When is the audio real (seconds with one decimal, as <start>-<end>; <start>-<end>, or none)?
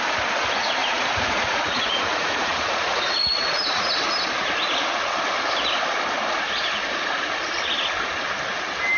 0.0-0.8; 3.9-6.9; 7.4-9.0